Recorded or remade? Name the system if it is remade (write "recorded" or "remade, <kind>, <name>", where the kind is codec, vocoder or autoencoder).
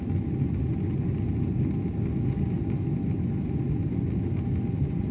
recorded